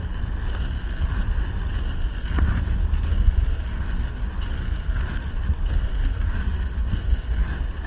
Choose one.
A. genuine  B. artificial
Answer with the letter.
A